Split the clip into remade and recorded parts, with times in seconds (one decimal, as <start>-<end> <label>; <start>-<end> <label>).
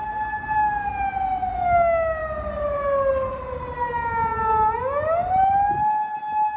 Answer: 0.0-6.6 recorded